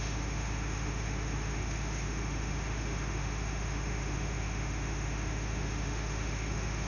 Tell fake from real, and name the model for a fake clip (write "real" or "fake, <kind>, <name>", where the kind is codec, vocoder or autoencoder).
fake, autoencoder, DAC-VAE